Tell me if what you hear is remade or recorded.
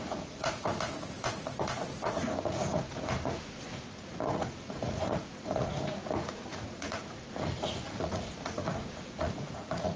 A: remade